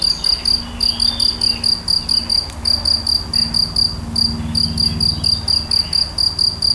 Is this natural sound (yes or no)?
yes